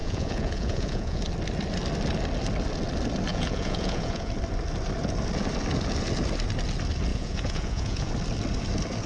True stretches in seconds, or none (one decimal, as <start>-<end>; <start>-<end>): 1.2-3.3; 4.3-7.1; 8.1-9.1